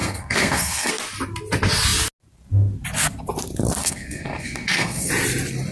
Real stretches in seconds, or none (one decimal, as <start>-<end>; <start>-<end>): 0.9-3.8; 5.1-5.7